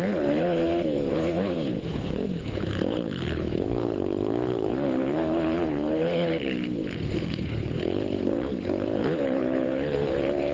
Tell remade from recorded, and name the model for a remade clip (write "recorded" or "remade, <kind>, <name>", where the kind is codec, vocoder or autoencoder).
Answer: remade, codec, HILCodec